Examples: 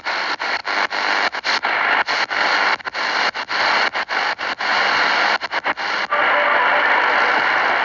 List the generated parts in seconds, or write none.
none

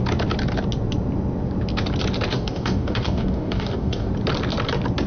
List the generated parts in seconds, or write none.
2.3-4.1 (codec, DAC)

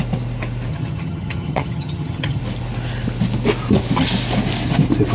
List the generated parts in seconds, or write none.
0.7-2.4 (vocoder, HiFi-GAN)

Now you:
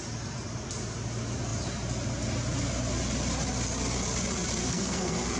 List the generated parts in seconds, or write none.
4.6-5.4 (codec, SNAC)

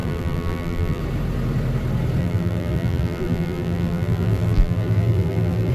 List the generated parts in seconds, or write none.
0.0-1.0 (vocoder, BigVGAN v2); 2.2-5.7

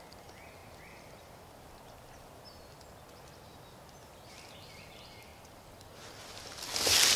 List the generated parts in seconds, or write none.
none